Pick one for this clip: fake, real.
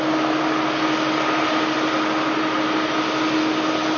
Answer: real